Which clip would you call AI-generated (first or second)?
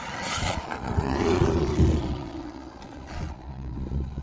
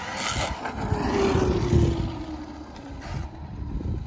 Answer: first